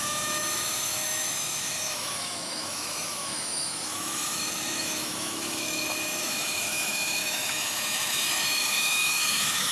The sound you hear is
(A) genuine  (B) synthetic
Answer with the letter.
B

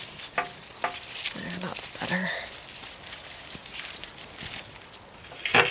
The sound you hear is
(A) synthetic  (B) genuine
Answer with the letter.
B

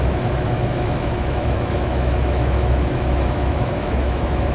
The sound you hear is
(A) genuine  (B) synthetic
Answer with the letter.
B